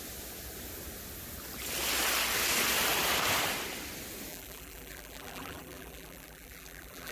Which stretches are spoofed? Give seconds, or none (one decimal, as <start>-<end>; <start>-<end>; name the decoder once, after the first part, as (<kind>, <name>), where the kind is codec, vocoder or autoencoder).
4.3-7.1 (vocoder, BigVGAN v2)